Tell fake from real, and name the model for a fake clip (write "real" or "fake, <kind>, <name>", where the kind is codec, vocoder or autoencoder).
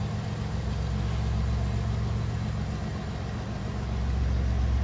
real